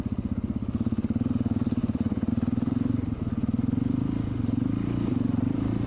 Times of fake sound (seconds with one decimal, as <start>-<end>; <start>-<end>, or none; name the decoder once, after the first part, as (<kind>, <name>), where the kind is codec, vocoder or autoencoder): 1.8-2.3 (vocoder, Vocos)